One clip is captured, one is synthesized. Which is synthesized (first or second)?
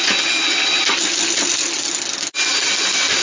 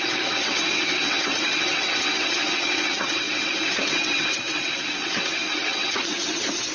second